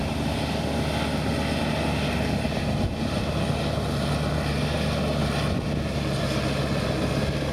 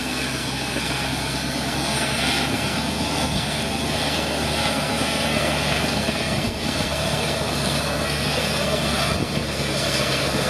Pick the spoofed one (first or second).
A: second